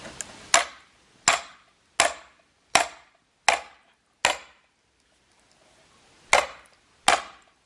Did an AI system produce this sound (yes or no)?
no